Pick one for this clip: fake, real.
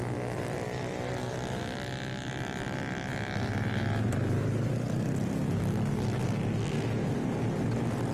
real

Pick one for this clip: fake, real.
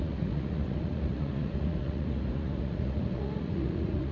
fake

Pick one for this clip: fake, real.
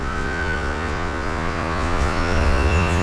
fake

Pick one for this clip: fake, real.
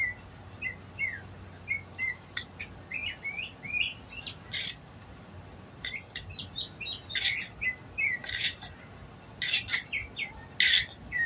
real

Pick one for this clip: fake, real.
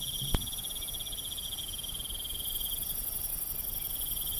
real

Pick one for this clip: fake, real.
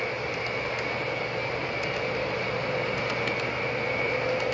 real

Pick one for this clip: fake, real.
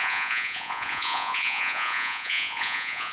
fake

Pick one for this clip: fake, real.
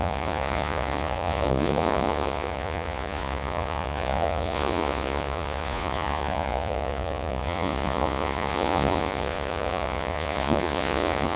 fake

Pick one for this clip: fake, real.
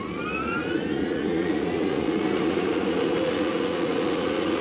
fake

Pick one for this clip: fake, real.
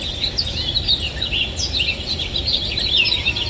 real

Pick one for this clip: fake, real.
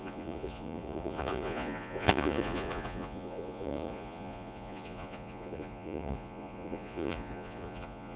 fake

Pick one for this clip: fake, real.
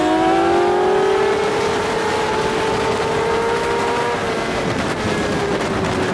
real